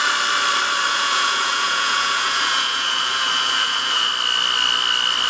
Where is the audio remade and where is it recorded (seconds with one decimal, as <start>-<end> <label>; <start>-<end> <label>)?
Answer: 0.0-0.9 recorded; 0.9-4.1 remade; 4.1-5.3 recorded

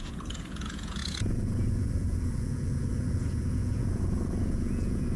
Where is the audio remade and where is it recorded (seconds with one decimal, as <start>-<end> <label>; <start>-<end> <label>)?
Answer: 0.0-5.2 remade